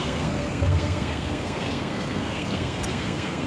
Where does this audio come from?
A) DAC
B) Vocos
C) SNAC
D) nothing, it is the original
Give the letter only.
C